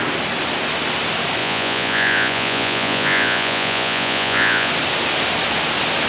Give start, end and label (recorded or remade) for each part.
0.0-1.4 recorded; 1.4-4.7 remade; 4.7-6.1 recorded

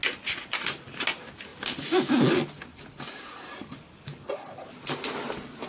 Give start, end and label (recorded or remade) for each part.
0.0-5.7 recorded

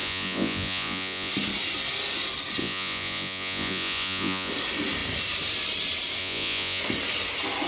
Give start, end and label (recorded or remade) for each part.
0.0-1.3 remade; 1.3-2.6 recorded; 2.6-4.5 remade; 4.5-6.2 recorded; 6.2-6.8 remade; 6.8-7.7 recorded

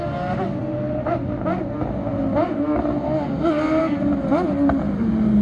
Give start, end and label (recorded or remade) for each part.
0.0-5.4 recorded

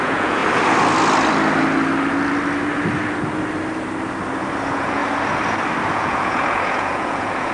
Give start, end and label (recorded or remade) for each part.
0.0-0.4 remade; 0.4-4.6 recorded; 4.6-5.0 remade; 5.0-5.9 recorded; 5.9-7.5 remade

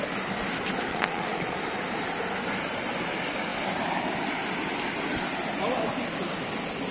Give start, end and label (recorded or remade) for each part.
0.0-0.9 recorded; 0.9-1.5 remade; 1.5-6.9 recorded